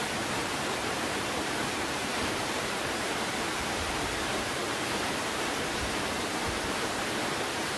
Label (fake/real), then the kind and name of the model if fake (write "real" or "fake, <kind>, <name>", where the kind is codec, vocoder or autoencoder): fake, vocoder, BigVGAN v2